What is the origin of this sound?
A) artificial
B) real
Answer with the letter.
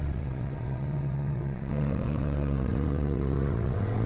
A